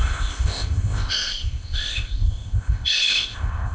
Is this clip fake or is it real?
fake